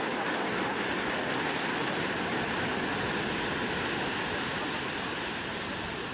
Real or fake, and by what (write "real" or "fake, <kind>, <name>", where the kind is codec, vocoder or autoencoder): real